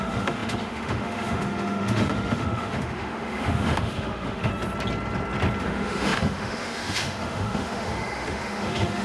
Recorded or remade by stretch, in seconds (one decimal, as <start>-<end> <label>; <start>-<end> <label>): 0.0-4.5 remade; 4.5-5.6 recorded; 5.6-9.0 remade